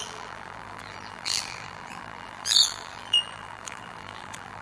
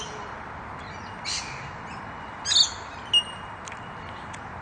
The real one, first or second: second